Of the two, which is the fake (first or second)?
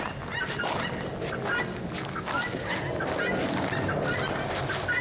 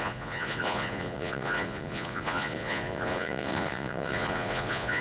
second